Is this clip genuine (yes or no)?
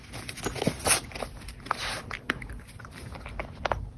yes